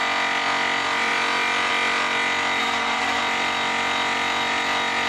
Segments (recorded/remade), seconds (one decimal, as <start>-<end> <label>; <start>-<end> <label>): 0.0-2.6 recorded; 2.6-3.2 remade; 3.2-5.1 recorded